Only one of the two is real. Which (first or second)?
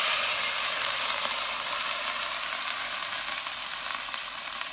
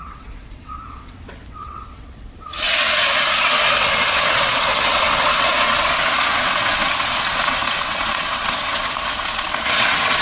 first